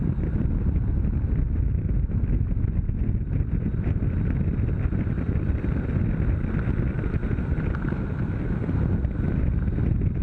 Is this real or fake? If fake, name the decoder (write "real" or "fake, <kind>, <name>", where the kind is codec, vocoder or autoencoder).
real